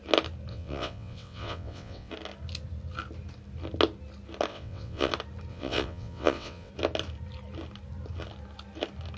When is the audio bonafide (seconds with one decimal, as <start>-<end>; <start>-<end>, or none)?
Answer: 0.0-0.5; 2.1-4.5; 5.1-5.5; 6.7-9.2